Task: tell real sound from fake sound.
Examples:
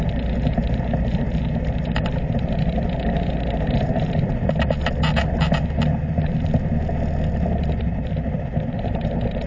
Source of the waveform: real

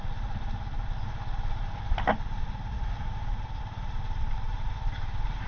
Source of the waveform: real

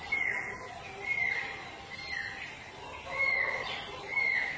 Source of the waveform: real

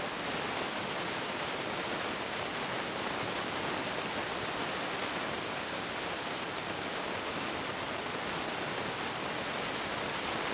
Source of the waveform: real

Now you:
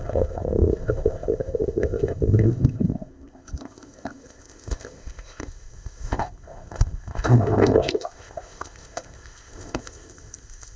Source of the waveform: fake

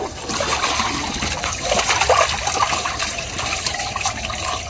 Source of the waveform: real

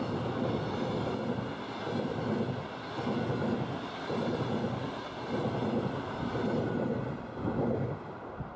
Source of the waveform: real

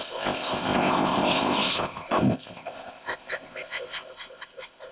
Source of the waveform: fake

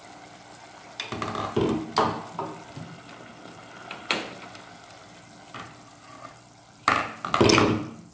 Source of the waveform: real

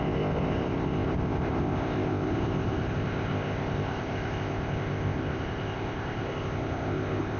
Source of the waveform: fake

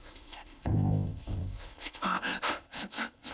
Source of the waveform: fake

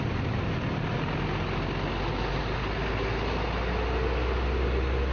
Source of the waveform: real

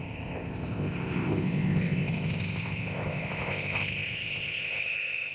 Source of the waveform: fake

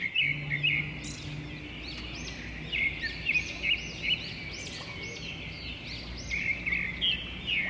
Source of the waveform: real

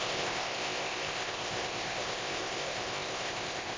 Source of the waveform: fake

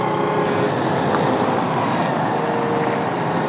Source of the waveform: real